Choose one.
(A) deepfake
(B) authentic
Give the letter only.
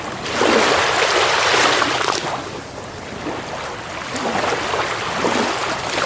B